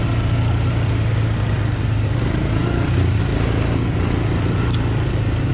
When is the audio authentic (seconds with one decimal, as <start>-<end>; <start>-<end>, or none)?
0.0-5.5